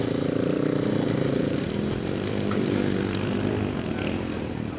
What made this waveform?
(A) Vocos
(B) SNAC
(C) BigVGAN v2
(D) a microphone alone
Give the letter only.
D